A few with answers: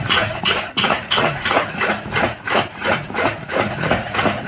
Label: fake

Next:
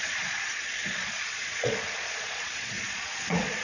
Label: fake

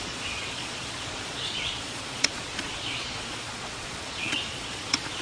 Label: fake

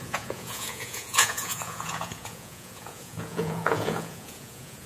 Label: fake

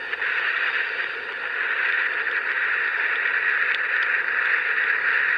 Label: real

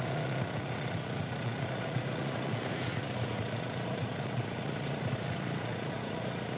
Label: fake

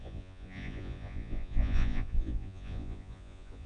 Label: fake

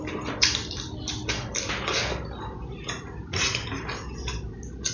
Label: real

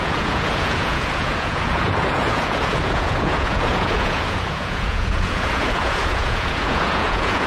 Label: fake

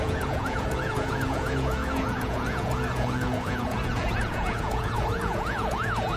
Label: fake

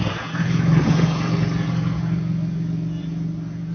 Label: fake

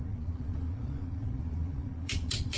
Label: fake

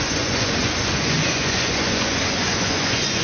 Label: fake